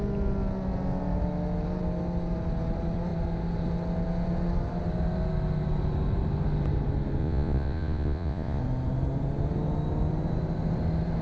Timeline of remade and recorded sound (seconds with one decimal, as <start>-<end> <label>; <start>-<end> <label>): 0.0-7.2 recorded; 7.2-8.6 remade; 8.6-11.2 recorded